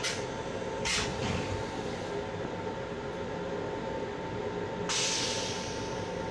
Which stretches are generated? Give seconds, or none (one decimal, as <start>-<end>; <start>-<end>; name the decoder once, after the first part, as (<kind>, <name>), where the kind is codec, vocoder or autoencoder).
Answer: none